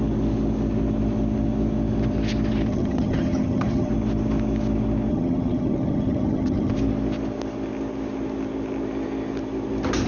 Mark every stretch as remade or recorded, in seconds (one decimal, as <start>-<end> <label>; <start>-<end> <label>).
0.0-2.7 recorded; 2.7-3.9 remade; 3.9-5.1 recorded; 5.1-6.7 remade; 6.7-10.1 recorded

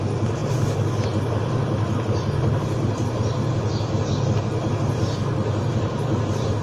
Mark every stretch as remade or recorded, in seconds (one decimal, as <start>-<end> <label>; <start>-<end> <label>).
0.0-6.6 recorded

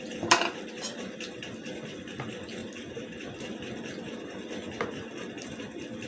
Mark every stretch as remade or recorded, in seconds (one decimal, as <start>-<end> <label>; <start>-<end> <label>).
0.0-6.1 recorded

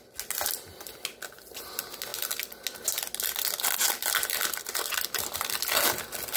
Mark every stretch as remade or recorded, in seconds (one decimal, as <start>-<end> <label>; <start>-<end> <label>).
0.0-6.4 recorded

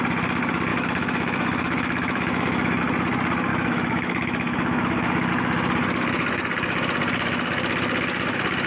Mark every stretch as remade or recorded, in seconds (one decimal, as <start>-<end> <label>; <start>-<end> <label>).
0.0-0.7 recorded; 0.7-2.8 remade; 2.8-3.5 recorded; 3.5-5.3 remade; 5.3-8.7 recorded

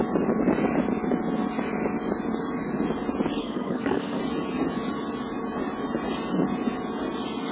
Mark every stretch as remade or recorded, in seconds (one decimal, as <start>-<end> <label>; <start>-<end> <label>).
0.0-3.4 recorded; 3.4-4.2 remade; 4.2-7.5 recorded

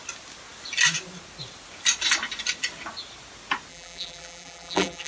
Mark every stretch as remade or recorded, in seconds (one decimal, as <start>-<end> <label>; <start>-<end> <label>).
0.0-3.7 recorded; 3.7-5.1 remade